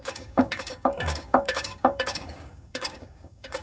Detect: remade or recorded remade